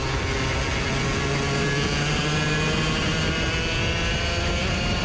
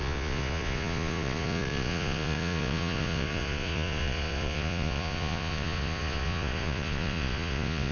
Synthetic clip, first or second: second